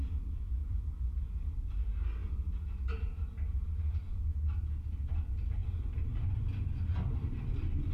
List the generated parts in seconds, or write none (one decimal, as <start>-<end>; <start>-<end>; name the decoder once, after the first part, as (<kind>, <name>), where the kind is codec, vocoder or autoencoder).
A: 0.6-1.3 (vocoder, BigVGAN v2)